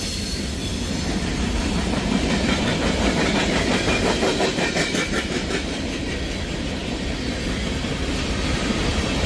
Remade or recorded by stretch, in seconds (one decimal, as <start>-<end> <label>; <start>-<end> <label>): 0.0-6.8 remade; 6.8-8.1 recorded; 8.1-9.3 remade